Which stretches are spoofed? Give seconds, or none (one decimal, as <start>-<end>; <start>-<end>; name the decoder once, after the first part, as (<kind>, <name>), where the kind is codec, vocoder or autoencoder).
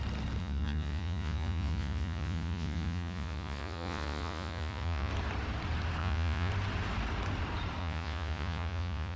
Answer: 0.4-5.1 (vocoder, Vocos); 6.0-6.5; 7.8-9.2